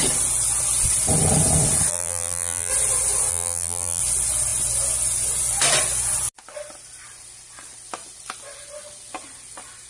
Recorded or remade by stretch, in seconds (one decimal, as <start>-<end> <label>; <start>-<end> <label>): 0.0-1.9 recorded; 1.9-2.7 remade; 2.7-3.3 recorded; 3.3-4.0 remade; 4.0-9.9 recorded